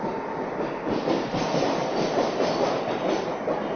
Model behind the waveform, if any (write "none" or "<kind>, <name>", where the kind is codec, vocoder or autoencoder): none